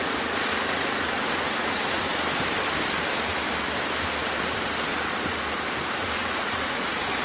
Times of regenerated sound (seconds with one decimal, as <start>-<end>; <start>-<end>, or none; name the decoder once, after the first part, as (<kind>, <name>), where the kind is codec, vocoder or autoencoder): 0.0-2.1 (vocoder, Vocos); 6.1-7.2